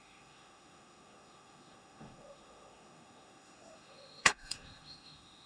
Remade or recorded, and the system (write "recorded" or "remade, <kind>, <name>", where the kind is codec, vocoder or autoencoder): remade, autoencoder, DAC-VAE